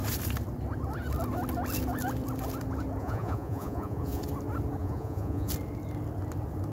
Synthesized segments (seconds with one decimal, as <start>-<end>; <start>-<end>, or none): 3.0-4.2; 4.8-5.5